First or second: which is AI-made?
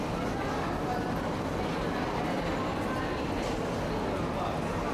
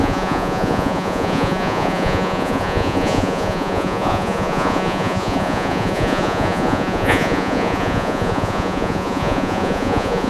second